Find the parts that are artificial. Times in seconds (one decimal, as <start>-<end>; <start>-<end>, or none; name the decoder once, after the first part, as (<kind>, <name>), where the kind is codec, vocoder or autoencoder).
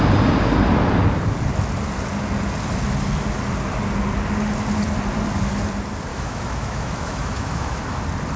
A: 6.1-8.0 (autoencoder, DAC-VAE)